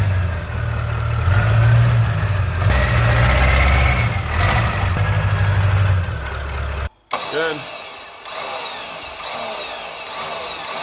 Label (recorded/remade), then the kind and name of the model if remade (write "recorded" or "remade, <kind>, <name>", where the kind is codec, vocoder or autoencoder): recorded